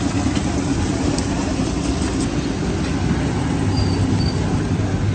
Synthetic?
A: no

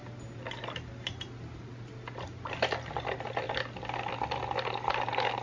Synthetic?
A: no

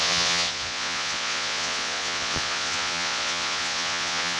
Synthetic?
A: yes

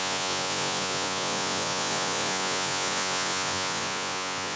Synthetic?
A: yes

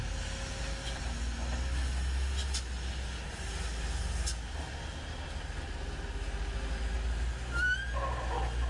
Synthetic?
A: no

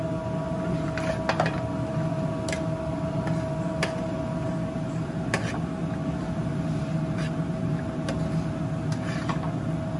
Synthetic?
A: no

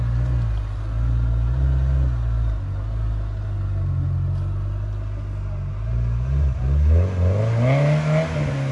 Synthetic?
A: no